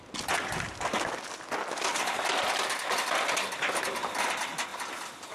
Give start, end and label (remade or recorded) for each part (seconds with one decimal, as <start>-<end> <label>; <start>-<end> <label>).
0.0-5.3 recorded